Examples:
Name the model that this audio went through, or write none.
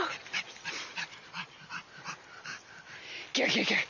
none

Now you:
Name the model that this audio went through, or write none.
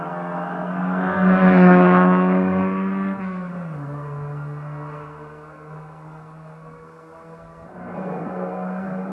codec, SNAC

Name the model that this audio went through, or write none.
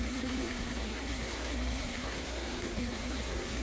codec, SNAC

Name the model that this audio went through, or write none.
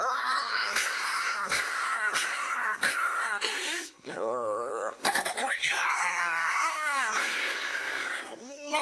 codec, SNAC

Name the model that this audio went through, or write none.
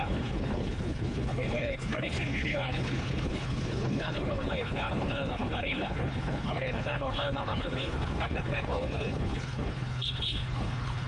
codec, HILCodec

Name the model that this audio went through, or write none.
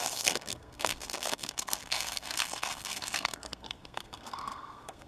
codec, SNAC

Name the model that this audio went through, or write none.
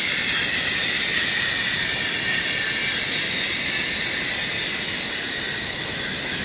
none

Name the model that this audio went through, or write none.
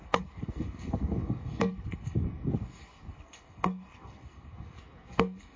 codec, SNAC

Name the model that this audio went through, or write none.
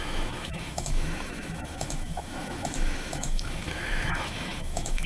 autoencoder, DAC-VAE